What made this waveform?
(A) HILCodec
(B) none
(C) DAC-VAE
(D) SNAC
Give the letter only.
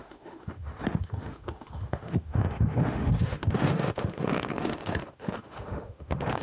C